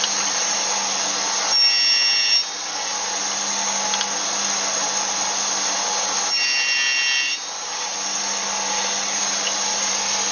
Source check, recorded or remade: recorded